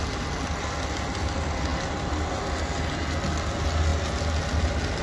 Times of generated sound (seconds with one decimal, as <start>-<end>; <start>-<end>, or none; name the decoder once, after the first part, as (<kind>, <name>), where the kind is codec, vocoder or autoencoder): none